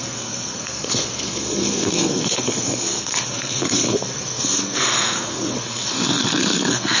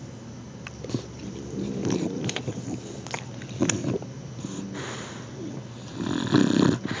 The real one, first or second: second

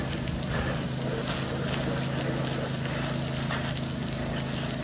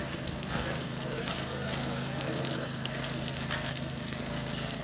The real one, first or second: first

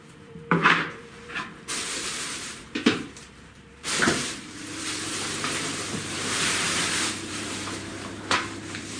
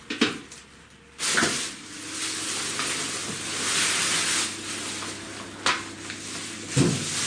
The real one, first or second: second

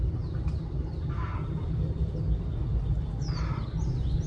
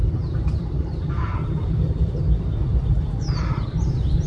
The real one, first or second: first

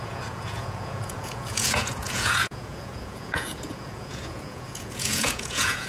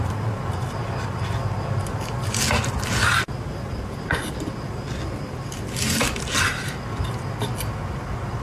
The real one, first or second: second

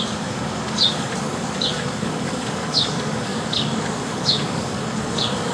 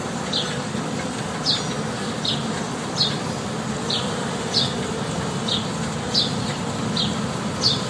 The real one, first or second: second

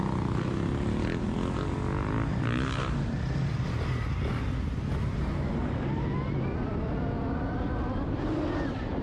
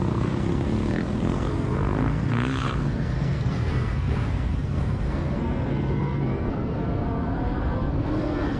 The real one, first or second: first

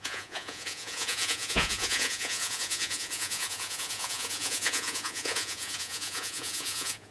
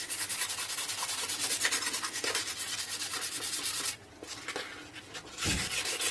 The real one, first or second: second